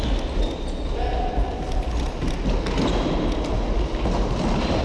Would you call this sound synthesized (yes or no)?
no